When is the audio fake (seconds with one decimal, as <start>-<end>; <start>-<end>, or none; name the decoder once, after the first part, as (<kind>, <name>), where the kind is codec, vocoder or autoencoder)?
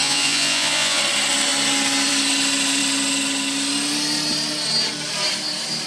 0.0-1.0 (vocoder, Vocos)